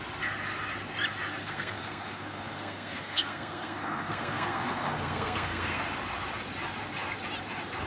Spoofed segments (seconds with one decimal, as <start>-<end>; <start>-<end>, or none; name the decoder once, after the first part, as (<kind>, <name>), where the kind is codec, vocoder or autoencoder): 1.4-5.8 (codec, SNAC)